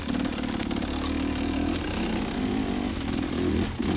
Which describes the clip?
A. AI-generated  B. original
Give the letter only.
B